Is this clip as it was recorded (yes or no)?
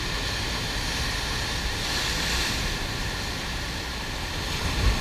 yes